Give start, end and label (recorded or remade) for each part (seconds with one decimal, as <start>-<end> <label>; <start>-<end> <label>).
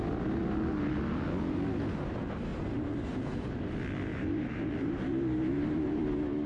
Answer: 0.0-2.5 recorded; 2.5-3.6 remade; 3.6-4.1 recorded; 4.1-6.0 remade; 6.0-6.5 recorded